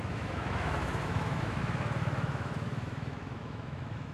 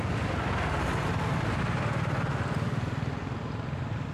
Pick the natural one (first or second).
second